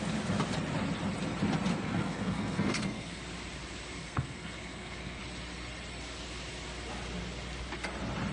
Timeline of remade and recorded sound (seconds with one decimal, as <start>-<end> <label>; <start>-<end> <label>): 0.0-1.7 recorded; 1.7-3.2 remade; 3.2-4.0 recorded; 4.0-5.2 remade; 5.2-8.3 recorded